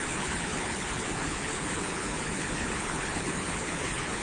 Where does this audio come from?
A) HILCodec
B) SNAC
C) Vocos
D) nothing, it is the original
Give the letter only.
A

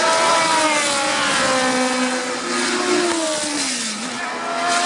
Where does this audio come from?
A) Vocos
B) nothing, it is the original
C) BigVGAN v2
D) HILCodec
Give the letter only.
B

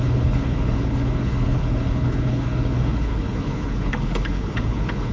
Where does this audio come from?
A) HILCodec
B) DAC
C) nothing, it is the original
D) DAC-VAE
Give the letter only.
A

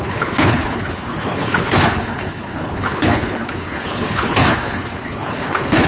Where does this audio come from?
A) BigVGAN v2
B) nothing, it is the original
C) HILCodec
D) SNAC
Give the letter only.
C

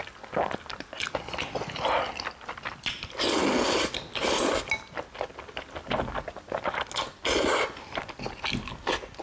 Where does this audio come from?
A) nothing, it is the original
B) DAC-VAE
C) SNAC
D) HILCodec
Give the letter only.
A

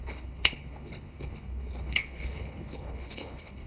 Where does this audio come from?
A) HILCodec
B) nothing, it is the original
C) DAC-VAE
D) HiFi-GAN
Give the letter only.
A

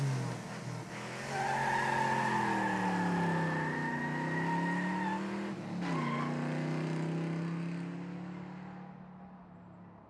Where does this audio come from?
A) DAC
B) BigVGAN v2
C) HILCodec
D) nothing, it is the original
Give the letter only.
D